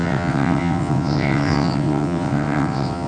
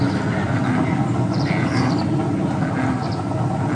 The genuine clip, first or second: second